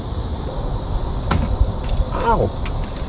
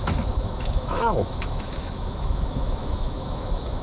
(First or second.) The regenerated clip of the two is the second